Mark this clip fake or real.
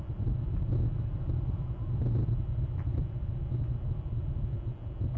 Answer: real